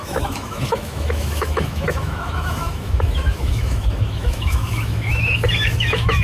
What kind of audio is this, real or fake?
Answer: fake